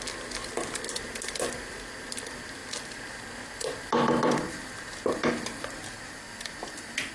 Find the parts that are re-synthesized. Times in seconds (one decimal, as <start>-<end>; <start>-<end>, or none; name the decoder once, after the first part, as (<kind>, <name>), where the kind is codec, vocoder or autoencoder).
0.4-1.0 (vocoder, BigVGAN v2); 2.6-7.1